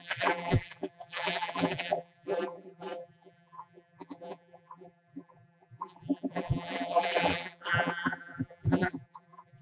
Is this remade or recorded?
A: remade